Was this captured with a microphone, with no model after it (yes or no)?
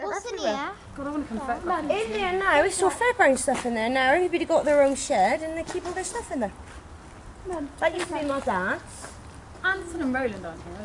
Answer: yes